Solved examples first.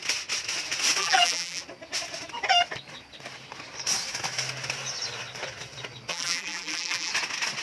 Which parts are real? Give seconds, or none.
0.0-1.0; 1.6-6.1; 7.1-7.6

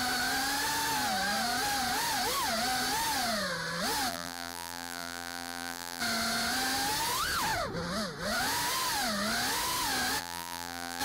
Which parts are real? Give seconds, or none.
0.0-4.1; 6.0-10.2

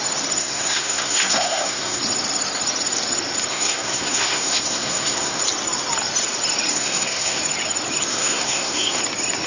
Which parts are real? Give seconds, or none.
0.0-0.4; 2.0-3.5; 5.4-6.7; 7.4-8.1; 9.0-9.5

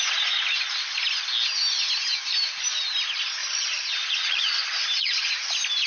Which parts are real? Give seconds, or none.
0.0-3.4; 5.5-5.9

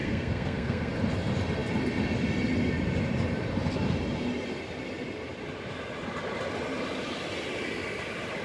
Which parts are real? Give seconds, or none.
0.9-8.4

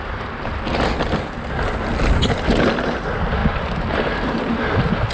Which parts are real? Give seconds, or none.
0.0-3.4; 4.5-5.1